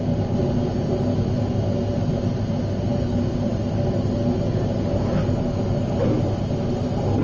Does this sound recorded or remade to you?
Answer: recorded